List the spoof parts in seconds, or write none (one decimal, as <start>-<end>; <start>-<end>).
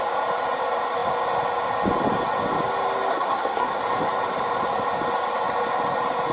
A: 3.1-3.8